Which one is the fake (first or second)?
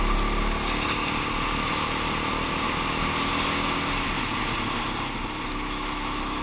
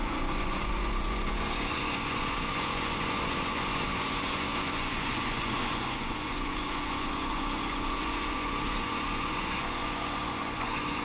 second